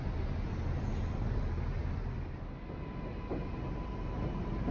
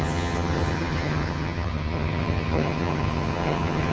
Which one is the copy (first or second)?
second